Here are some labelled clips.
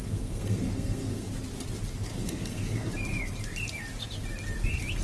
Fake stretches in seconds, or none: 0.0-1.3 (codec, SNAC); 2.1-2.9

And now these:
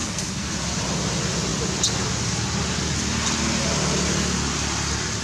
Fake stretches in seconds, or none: 0.0-0.5 (codec, SNAC)

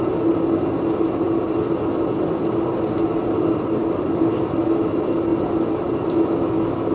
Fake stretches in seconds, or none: none

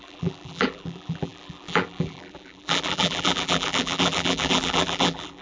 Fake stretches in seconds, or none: 0.0-5.4 (vocoder, BigVGAN v2)

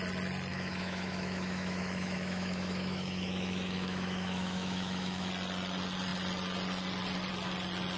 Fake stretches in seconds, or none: 0.5-5.3 (autoencoder, DAC-VAE)

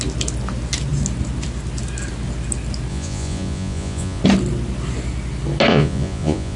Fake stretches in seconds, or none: 2.9-4.2 (vocoder, Vocos); 5.7-6.6

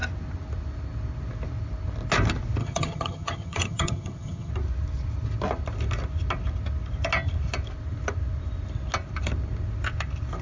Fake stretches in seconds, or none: 2.6-4.5 (vocoder, HiFi-GAN)

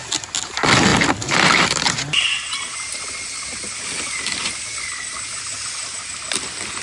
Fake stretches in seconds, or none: none